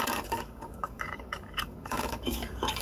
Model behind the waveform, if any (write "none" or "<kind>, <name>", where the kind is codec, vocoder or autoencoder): codec, DAC